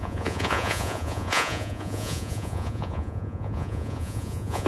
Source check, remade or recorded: remade